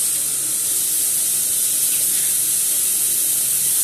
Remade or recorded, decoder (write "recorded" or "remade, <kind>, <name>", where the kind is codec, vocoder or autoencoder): recorded